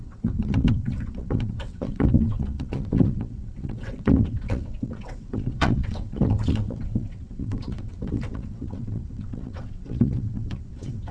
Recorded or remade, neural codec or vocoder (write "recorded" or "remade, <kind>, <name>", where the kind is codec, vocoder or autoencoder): remade, vocoder, WaveNeXt